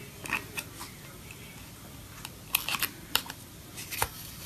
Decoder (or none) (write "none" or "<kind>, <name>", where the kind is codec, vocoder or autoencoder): vocoder, BigVGAN v2